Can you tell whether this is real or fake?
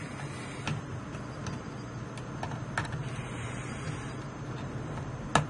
real